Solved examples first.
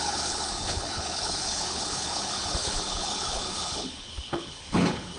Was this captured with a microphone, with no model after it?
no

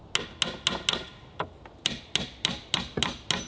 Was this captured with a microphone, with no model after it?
yes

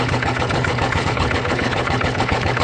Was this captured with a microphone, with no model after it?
no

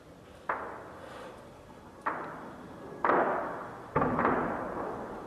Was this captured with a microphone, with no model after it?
yes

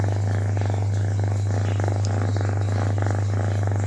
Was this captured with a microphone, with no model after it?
yes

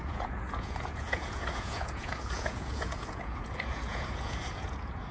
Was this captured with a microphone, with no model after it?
no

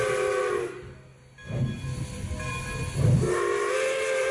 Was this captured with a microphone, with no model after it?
yes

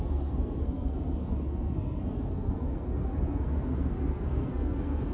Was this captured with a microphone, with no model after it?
no